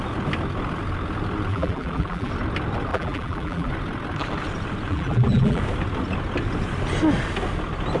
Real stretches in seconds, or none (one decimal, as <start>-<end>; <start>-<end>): 0.0-1.5; 2.3-2.9; 3.7-4.9; 5.6-8.0